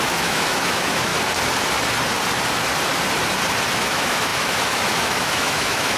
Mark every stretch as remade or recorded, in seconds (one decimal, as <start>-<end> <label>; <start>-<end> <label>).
0.0-1.1 remade; 1.1-3.8 recorded; 3.8-6.0 remade